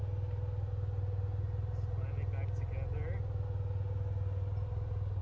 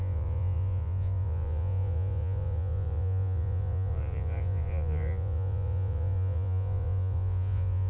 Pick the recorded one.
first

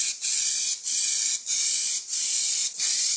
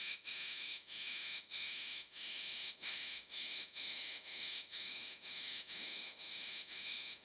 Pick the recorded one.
first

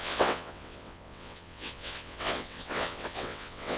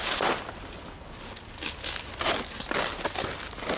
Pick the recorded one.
second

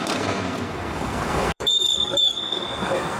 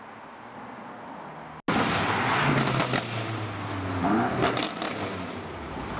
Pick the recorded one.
second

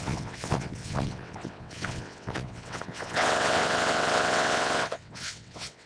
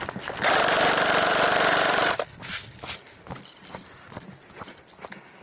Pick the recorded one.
second